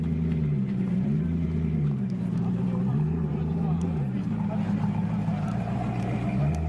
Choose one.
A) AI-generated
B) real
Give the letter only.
A